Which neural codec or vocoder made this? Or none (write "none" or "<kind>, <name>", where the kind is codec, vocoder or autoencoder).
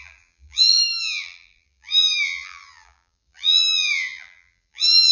vocoder, BigVGAN v2